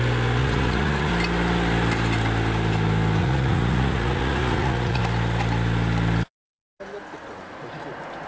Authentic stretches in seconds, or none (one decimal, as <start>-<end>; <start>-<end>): 0.0-0.4; 1.1-3.2; 5.0-8.3